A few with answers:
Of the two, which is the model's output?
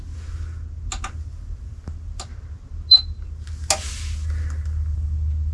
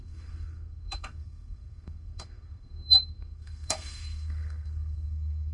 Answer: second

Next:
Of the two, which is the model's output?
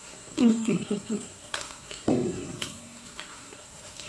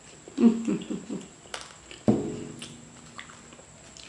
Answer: first